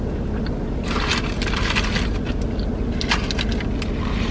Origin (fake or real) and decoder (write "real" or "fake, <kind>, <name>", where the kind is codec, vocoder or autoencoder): real